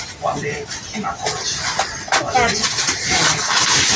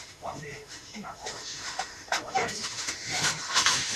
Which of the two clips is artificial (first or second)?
second